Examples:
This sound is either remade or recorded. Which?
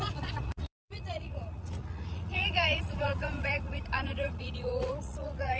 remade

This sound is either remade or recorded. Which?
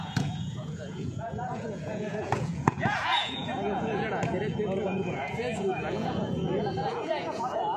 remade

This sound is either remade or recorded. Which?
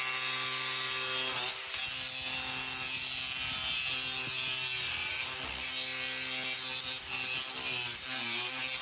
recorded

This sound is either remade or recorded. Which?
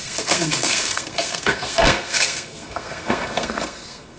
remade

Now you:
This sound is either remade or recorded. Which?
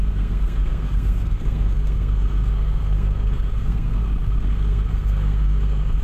remade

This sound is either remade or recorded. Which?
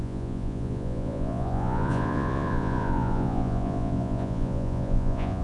remade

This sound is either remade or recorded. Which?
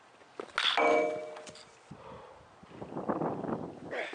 recorded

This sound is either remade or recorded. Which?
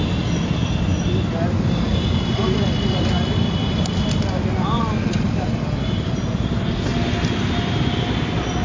recorded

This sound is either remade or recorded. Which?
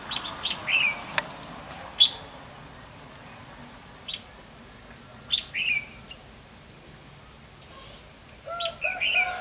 recorded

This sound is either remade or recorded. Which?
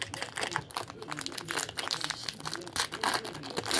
recorded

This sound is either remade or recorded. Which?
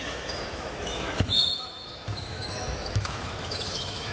remade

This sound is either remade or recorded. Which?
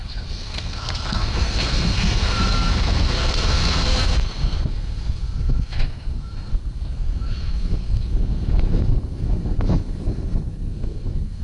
remade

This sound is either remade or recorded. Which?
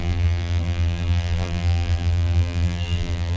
remade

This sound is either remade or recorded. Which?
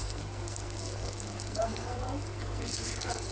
remade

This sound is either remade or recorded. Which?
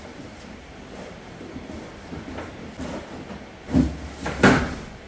remade